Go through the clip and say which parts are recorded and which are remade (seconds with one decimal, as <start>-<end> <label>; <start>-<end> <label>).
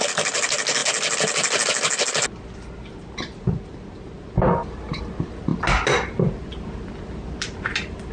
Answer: 0.0-8.1 recorded